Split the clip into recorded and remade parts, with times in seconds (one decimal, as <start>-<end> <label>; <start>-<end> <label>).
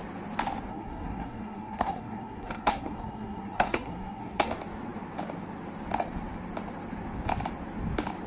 0.0-0.7 recorded; 0.7-4.5 remade; 4.5-8.3 recorded